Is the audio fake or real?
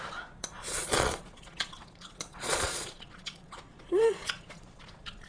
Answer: fake